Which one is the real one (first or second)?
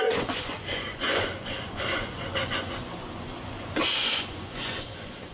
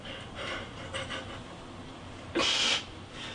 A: second